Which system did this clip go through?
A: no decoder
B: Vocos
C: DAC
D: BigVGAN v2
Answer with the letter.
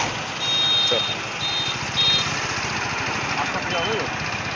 A